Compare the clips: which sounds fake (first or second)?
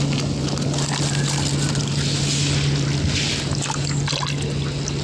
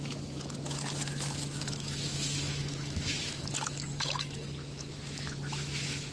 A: second